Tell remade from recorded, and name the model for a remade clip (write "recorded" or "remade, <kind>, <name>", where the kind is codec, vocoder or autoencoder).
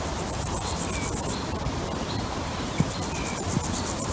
remade, vocoder, BigVGAN v2